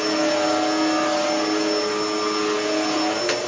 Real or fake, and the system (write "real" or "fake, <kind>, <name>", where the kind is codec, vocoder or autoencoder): real